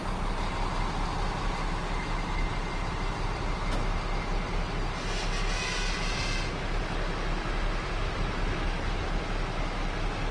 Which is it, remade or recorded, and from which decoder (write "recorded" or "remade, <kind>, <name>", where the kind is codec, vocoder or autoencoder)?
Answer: recorded